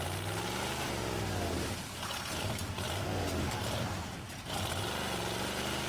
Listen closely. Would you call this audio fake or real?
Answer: real